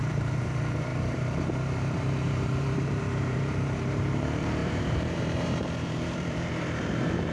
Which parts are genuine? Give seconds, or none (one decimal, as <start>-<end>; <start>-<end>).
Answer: none